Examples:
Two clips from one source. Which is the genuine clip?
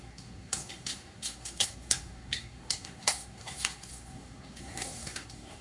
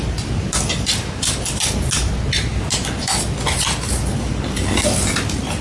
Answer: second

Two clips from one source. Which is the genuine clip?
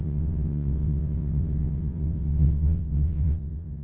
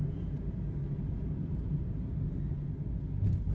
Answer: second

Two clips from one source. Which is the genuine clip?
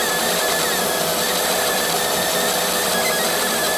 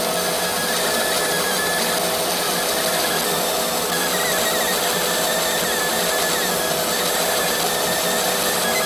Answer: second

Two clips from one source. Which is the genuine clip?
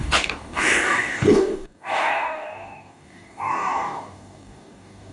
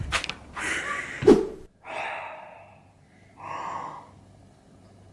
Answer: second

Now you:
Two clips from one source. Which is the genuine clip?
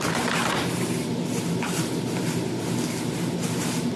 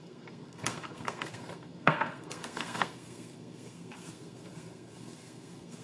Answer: first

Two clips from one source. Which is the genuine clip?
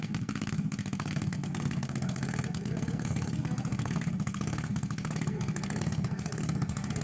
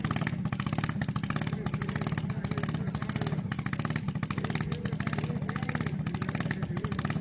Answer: second